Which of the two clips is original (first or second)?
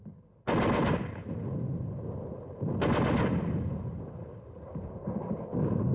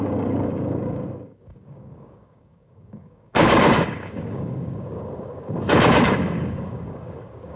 first